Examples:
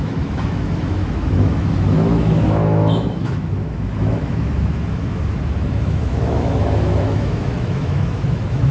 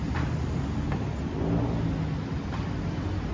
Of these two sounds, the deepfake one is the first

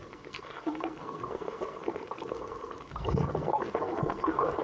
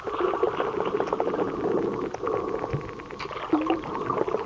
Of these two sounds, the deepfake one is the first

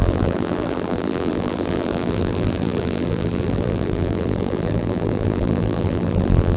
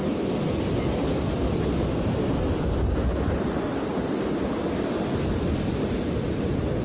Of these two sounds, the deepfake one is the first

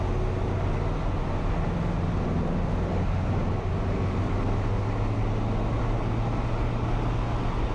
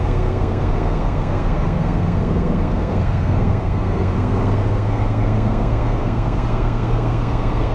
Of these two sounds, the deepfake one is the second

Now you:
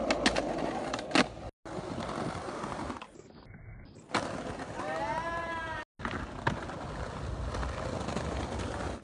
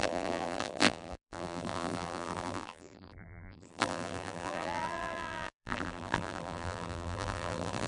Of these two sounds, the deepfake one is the second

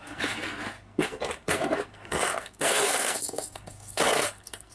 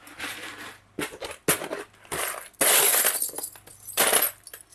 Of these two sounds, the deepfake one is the first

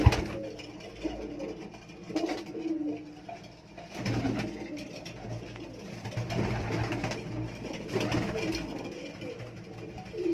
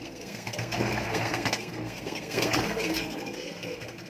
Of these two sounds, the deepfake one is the second